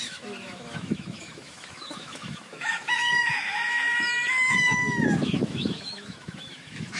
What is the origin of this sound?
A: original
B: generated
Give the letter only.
B